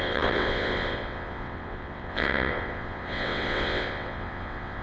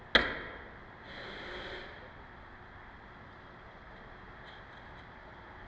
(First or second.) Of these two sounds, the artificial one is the first